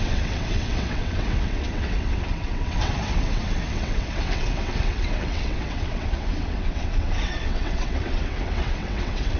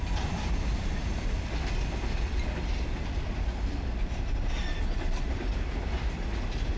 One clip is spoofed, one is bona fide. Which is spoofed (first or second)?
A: first